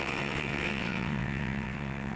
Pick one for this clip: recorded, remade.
remade